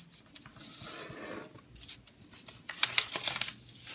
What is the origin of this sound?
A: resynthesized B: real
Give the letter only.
B